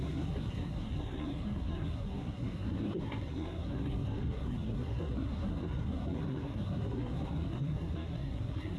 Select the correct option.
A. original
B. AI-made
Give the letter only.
B